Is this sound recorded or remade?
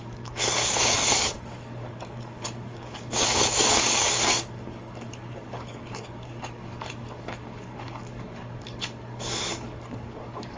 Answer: remade